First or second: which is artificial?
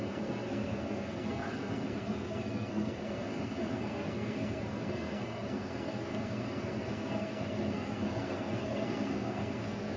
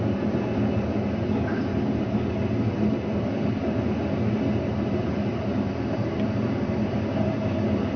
first